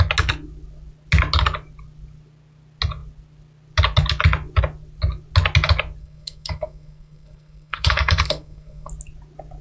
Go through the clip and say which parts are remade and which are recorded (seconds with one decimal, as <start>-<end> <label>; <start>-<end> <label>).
0.0-6.0 recorded; 6.0-8.9 remade; 8.9-9.6 recorded